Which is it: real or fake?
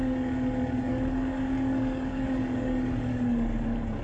fake